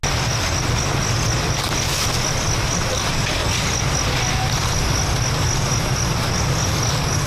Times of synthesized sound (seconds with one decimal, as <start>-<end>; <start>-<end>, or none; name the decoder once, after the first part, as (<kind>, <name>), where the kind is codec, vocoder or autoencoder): none